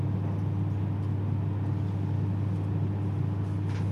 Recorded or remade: recorded